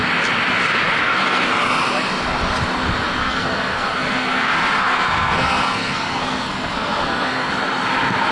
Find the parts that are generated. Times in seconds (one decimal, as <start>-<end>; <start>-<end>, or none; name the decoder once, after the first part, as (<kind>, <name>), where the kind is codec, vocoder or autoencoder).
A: 1.0-1.5 (codec, SNAC); 3.2-7.5